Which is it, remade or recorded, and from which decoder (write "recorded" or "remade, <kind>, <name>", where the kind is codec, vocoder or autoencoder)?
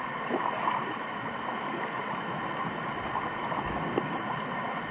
recorded